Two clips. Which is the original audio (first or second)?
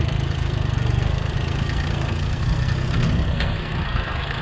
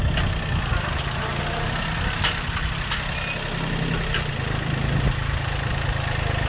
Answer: second